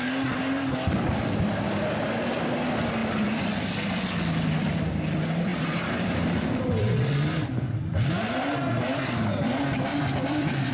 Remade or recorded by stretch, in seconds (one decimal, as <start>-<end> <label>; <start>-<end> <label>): 0.0-3.0 recorded; 3.0-4.8 remade; 4.8-5.5 recorded; 5.5-8.5 remade; 8.5-9.9 recorded; 9.9-10.7 remade